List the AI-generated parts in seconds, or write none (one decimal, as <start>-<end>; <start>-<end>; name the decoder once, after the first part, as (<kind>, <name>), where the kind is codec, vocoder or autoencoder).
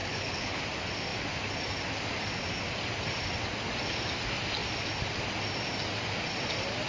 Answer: 0.0-0.6 (codec, HILCodec)